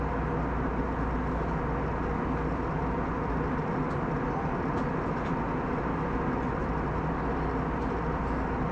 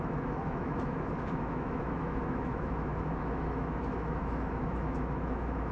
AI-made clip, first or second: second